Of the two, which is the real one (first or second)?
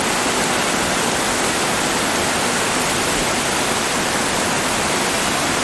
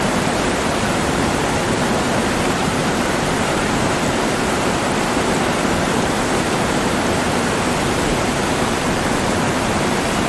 first